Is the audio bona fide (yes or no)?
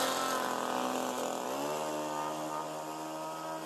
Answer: yes